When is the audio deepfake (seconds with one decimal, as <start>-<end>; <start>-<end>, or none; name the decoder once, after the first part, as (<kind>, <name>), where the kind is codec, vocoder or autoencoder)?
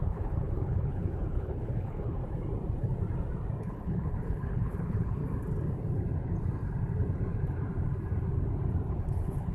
0.0-2.2 (codec, HILCodec); 3.6-5.2; 8.9-9.5